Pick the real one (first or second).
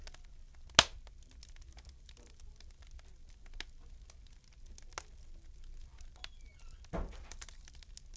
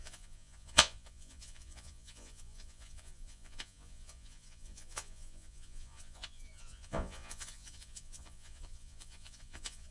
first